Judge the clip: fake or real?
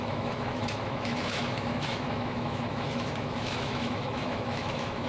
fake